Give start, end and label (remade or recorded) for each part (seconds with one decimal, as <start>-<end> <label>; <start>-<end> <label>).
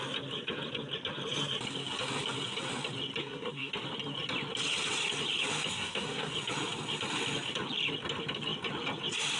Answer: 0.0-3.2 recorded; 3.2-3.7 remade; 3.7-5.7 recorded; 5.7-6.3 remade; 6.3-9.4 recorded